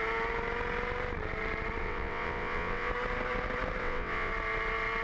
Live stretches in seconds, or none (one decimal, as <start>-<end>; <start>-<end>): 0.0-1.8; 2.9-3.8; 4.3-5.0